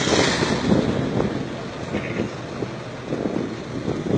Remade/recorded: recorded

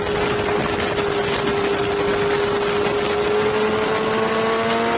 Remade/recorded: recorded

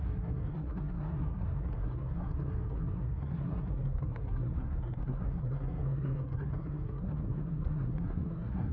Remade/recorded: remade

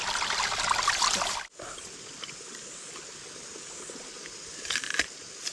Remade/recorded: recorded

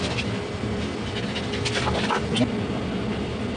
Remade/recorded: recorded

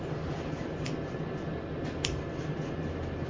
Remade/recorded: recorded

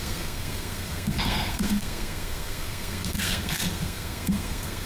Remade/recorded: remade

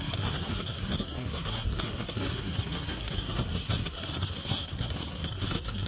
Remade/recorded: remade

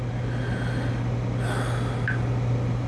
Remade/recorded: recorded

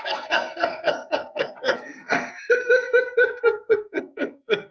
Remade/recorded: remade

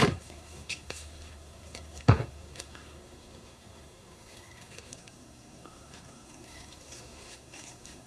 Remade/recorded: remade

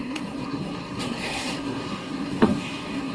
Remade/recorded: remade